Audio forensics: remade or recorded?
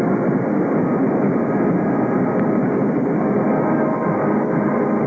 recorded